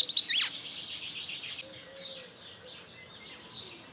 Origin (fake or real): real